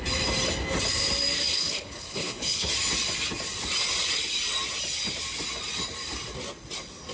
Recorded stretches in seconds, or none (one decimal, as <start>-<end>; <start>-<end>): 0.0-1.5; 2.7-7.1